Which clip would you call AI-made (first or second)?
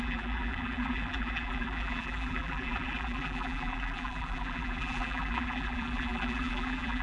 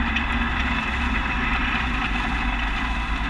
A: first